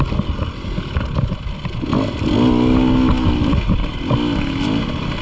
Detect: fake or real real